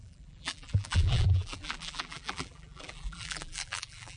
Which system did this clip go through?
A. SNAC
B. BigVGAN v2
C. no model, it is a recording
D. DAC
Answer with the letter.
B